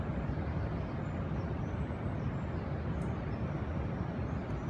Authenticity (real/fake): real